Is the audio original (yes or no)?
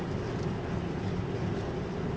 yes